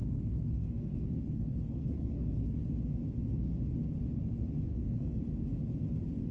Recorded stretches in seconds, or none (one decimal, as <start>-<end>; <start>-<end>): 2.6-4.7; 5.2-6.3